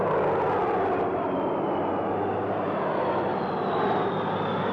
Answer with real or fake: real